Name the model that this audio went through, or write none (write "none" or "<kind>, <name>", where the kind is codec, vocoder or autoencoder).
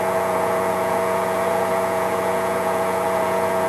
vocoder, Vocos